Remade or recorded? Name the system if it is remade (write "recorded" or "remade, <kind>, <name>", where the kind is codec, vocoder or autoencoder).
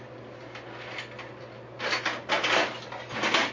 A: recorded